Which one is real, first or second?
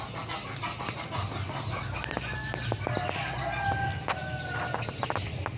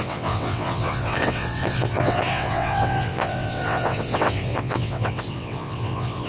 first